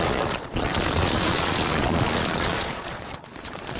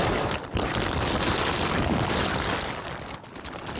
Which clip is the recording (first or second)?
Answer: second